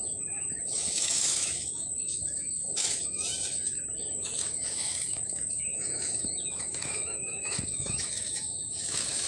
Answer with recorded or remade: remade